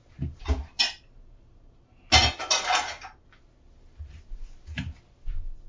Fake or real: real